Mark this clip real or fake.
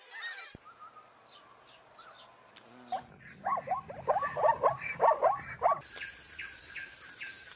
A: real